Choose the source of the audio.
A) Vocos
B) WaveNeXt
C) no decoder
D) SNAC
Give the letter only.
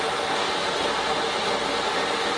C